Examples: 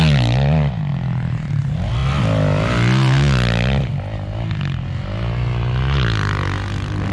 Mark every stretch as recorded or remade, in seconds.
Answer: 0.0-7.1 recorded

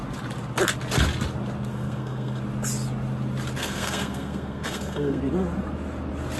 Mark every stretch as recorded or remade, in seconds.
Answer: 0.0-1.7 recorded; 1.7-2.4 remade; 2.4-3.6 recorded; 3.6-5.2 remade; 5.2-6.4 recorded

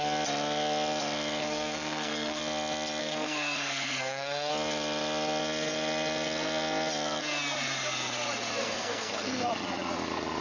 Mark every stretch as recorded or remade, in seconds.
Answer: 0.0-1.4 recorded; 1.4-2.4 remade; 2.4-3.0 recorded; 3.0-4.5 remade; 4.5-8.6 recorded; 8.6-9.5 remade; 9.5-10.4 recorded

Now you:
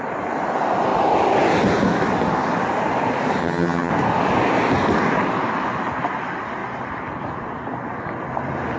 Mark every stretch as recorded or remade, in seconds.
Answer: 0.0-3.4 recorded; 3.4-3.9 remade; 3.9-8.8 recorded

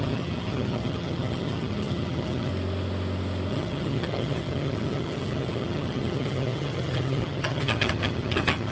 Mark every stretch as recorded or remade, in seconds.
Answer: 0.0-2.5 remade; 2.5-3.5 recorded; 3.5-8.7 remade

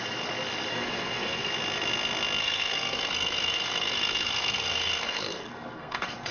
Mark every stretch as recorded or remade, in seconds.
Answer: 0.0-0.7 recorded; 0.7-1.5 remade; 1.5-2.4 recorded; 2.4-6.3 remade